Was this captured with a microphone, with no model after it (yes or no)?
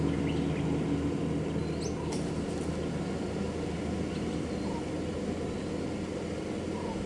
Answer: yes